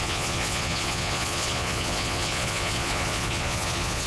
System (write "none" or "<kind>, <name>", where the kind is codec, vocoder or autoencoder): vocoder, Vocos